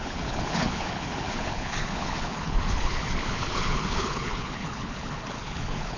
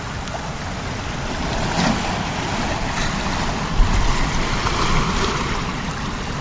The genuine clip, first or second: second